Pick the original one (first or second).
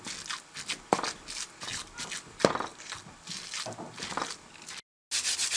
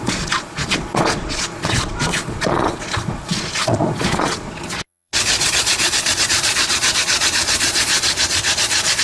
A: first